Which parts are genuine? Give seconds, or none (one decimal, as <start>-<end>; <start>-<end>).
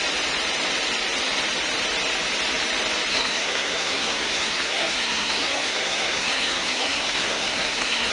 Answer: 0.0-3.1